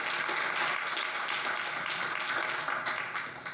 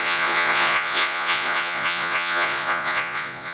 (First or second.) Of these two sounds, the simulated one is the second